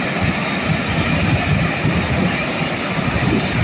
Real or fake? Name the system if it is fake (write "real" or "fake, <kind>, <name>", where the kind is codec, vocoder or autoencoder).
real